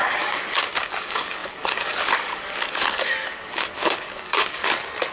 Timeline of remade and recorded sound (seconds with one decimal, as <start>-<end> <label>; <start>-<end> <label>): 0.0-4.6 remade; 4.6-5.1 recorded

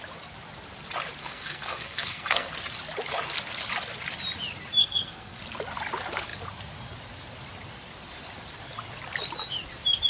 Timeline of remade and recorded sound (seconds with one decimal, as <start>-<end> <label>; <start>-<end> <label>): 0.0-1.2 recorded; 1.2-2.5 remade; 2.5-4.8 recorded; 4.8-5.4 remade; 5.4-10.1 recorded

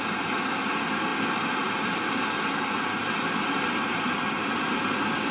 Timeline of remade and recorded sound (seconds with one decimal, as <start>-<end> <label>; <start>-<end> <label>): 0.0-5.3 recorded

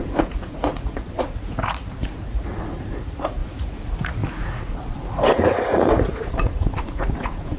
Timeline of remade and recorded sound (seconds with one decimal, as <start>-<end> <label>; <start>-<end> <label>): 0.0-7.6 remade

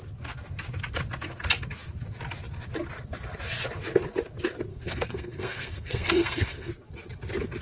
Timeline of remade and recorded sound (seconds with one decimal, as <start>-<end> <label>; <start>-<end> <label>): 0.0-4.7 recorded; 4.7-6.7 remade; 6.7-7.6 recorded

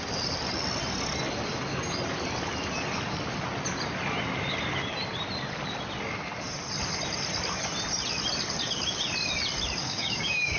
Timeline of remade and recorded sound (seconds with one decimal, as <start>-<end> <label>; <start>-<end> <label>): 0.0-9.8 recorded; 9.8-10.6 remade

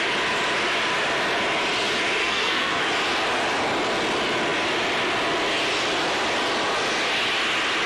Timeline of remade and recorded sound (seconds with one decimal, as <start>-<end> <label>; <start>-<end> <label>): 0.0-2.2 recorded; 2.2-2.8 remade; 2.8-7.9 recorded

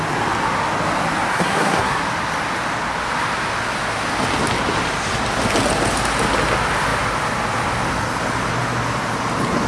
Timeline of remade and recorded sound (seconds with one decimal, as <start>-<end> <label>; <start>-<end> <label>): 0.0-1.3 recorded; 1.3-2.0 remade; 2.0-9.7 recorded